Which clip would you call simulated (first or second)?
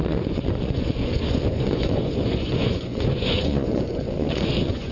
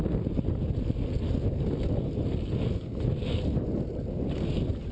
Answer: first